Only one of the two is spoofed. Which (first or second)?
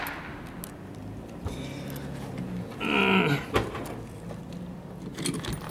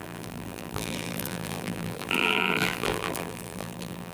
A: second